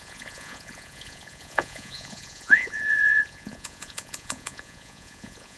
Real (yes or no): no